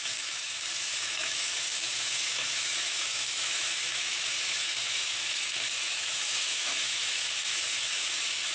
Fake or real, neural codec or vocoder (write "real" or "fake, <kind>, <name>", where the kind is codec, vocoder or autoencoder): fake, autoencoder, DAC-VAE